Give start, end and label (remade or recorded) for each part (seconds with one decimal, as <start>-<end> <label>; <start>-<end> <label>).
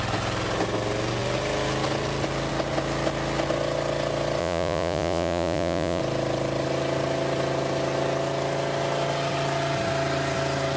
0.0-4.4 recorded; 4.4-6.0 remade; 6.0-10.8 recorded